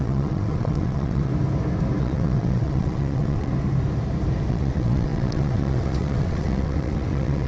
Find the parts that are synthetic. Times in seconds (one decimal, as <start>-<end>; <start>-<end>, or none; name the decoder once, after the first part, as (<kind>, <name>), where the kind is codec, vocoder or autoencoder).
0.0-1.3 (vocoder, WaveNeXt); 2.0-3.5; 4.5-7.5